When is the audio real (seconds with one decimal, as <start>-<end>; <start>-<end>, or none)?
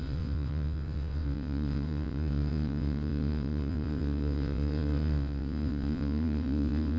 none